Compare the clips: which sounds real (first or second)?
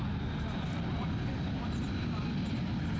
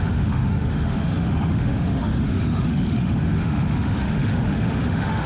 first